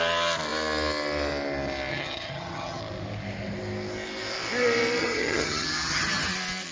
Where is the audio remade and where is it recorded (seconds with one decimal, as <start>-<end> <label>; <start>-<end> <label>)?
0.0-1.9 recorded; 1.9-2.8 remade; 2.8-5.0 recorded; 5.0-6.3 remade; 6.3-6.7 recorded